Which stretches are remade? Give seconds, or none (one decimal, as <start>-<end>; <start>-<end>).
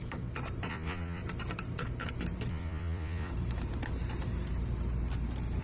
0.7-1.2; 2.5-3.3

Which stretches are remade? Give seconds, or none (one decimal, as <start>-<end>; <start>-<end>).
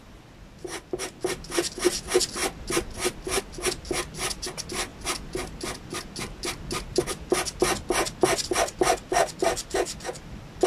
none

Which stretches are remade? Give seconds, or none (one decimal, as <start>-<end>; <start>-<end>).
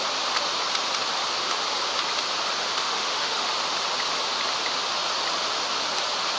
2.6-3.5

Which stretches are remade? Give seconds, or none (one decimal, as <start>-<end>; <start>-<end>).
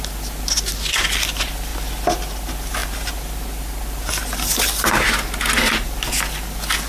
none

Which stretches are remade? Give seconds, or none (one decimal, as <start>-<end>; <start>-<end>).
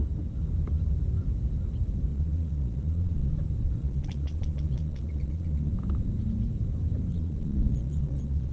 2.1-3.3; 3.8-5.7; 7.1-8.5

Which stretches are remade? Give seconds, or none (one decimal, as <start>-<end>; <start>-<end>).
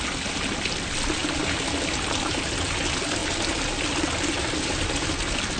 none